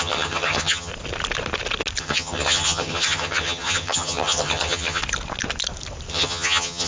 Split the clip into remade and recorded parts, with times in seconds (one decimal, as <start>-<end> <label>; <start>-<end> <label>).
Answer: 0.0-0.9 remade; 0.9-2.0 recorded; 2.0-5.0 remade; 5.0-6.1 recorded; 6.1-6.9 remade